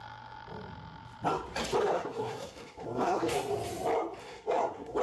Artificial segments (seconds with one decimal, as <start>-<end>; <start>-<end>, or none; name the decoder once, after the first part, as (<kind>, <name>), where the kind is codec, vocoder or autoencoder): 1.8-3.5 (codec, SNAC); 4.2-5.0